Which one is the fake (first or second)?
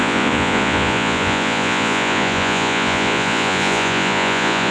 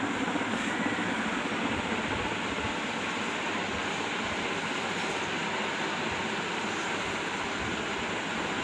first